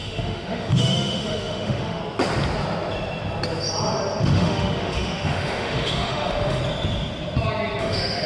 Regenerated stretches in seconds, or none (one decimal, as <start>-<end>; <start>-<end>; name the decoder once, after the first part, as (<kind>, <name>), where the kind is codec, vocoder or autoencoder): 0.0-2.0 (autoencoder, DAC-VAE); 4.2-6.6; 7.8-8.3